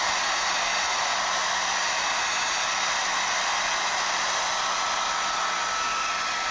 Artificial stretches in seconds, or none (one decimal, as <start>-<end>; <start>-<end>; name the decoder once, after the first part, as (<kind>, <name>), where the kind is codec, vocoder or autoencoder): none